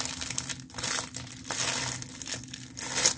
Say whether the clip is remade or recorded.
recorded